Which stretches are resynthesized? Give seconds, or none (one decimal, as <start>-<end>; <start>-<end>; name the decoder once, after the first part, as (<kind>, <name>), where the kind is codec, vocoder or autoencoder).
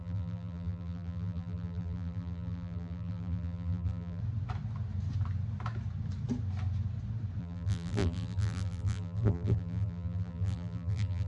0.0-4.2 (vocoder, BigVGAN v2); 7.4-11.3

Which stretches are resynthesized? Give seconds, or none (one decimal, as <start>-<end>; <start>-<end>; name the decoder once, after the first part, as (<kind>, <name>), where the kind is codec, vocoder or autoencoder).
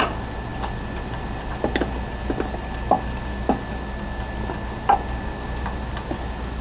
none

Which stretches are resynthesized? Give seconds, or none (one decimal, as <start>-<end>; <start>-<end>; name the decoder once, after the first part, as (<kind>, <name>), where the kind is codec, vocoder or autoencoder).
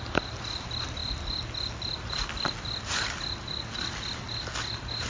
none